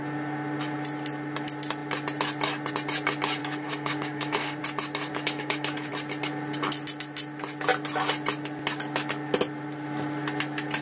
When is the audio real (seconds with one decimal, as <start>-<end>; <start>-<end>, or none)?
0.0-3.4; 4.6-5.1; 5.9-10.8